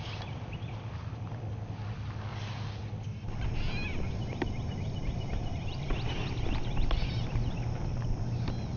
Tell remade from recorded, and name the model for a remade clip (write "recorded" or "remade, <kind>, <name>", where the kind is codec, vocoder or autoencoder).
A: recorded